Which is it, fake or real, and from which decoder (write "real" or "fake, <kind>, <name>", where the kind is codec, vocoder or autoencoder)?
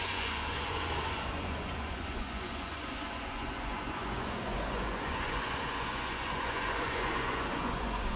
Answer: fake, vocoder, Vocos